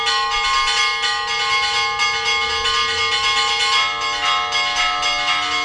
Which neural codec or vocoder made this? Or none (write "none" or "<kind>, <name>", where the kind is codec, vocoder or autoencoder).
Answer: none